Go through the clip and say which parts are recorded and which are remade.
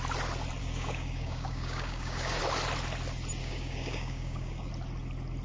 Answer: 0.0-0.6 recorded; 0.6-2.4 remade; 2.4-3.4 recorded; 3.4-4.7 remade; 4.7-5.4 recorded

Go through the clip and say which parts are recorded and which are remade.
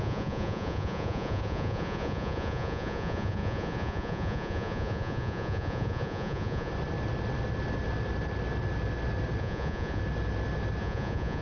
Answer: 0.0-6.7 remade; 6.7-9.4 recorded; 9.4-10.0 remade; 10.0-10.8 recorded; 10.8-11.4 remade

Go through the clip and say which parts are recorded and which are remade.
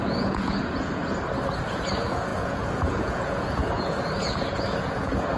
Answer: 0.0-1.0 remade; 1.0-1.6 recorded; 1.6-5.4 remade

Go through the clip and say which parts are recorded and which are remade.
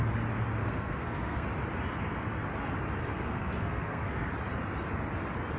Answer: 0.0-0.6 recorded; 0.6-1.5 remade; 1.5-3.0 recorded; 3.0-4.3 remade; 4.3-5.6 recorded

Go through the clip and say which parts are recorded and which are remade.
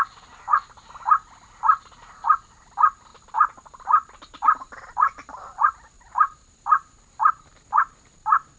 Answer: 0.0-3.1 recorded; 3.1-6.5 remade; 6.5-8.6 recorded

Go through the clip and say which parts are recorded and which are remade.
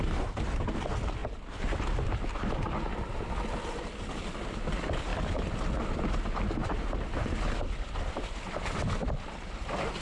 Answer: 0.0-5.1 recorded; 5.1-6.0 remade; 6.0-6.6 recorded; 6.6-8.4 remade; 8.4-10.0 recorded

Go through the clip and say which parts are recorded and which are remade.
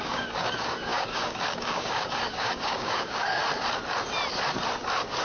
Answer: 0.0-3.4 remade; 3.4-5.2 recorded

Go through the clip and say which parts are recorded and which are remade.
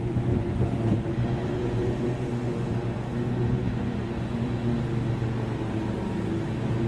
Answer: 0.0-4.7 remade; 4.7-6.9 recorded